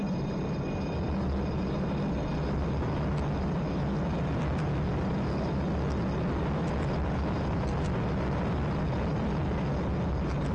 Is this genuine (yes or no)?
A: yes